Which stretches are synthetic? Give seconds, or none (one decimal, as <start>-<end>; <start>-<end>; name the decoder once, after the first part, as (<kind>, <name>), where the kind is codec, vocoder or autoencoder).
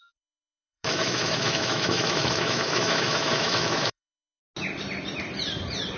0.0-4.4 (autoencoder, DAC-VAE)